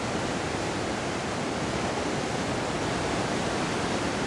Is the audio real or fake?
real